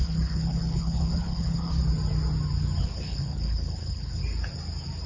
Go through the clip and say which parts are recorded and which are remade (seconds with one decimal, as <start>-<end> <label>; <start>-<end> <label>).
0.0-1.7 remade; 1.7-2.8 recorded; 2.8-4.2 remade; 4.2-5.1 recorded